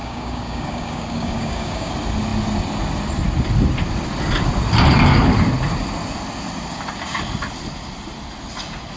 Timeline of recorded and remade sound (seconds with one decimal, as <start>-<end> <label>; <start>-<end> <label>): 0.0-1.9 remade; 1.9-9.0 recorded